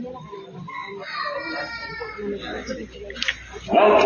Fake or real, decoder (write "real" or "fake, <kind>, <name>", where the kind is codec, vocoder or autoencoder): real